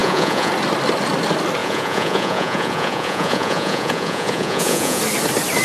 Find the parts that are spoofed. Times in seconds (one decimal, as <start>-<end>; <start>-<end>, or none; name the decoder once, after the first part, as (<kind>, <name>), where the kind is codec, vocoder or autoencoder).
0.0-0.5 (vocoder, Vocos); 1.6-5.0